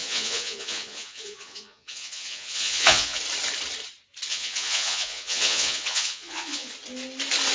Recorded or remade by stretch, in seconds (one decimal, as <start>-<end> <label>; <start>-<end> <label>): 0.0-3.2 remade; 3.2-4.3 recorded; 4.3-6.7 remade; 6.7-7.5 recorded